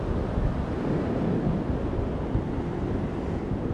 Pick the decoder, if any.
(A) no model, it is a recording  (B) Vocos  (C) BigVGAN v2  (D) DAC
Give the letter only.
A